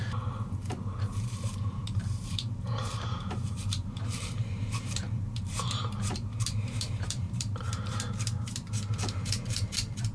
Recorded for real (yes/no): no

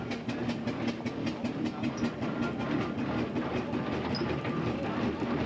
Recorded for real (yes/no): yes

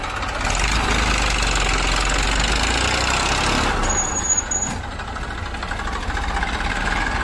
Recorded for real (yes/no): yes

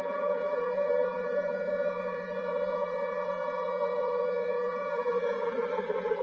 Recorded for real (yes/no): no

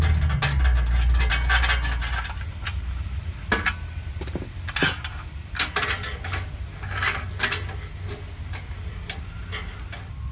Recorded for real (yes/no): yes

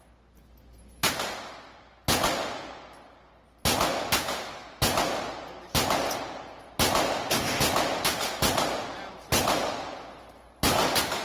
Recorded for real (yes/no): yes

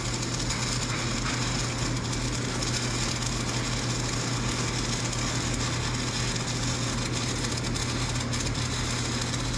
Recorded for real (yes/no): yes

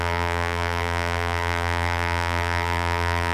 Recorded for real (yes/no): no